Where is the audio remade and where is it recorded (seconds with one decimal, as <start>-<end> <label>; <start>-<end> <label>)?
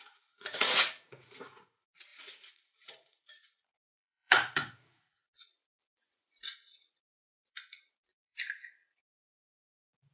0.0-10.1 remade